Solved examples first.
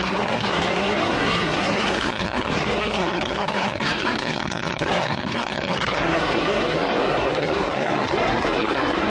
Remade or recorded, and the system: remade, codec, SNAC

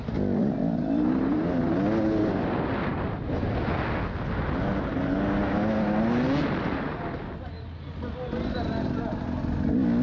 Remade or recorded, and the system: recorded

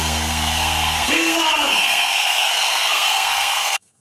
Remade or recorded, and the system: remade, codec, SNAC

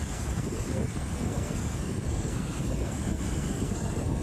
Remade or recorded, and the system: remade, codec, SNAC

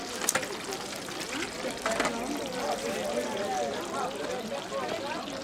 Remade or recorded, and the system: recorded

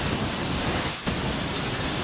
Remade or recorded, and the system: recorded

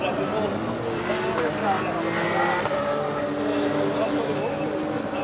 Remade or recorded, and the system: recorded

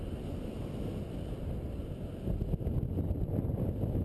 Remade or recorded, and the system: recorded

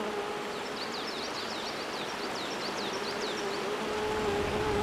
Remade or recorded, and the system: recorded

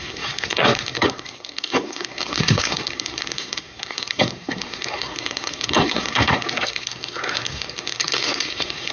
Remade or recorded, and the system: remade, codec, SNAC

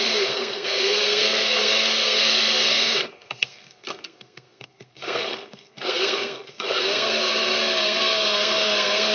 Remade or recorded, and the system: remade, codec, SNAC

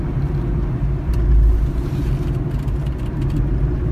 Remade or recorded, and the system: recorded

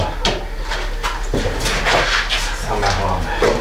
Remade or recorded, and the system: recorded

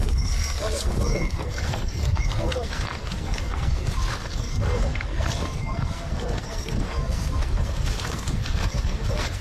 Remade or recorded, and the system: remade, codec, SNAC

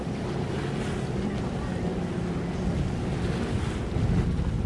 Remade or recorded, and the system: recorded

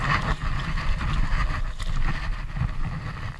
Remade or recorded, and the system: recorded